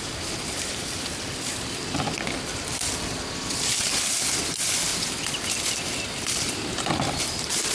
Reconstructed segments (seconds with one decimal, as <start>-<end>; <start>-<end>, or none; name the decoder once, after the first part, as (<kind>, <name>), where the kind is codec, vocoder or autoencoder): none